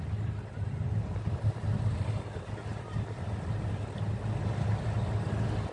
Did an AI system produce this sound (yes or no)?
no